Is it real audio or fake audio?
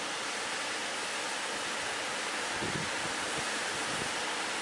real